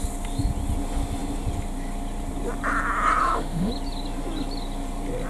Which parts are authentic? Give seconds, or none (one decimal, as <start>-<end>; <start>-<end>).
0.0-3.2; 3.7-5.3